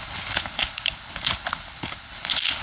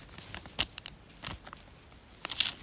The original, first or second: second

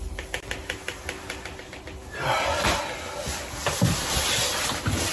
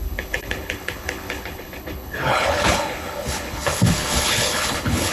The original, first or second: first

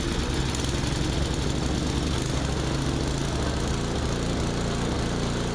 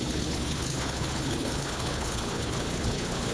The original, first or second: first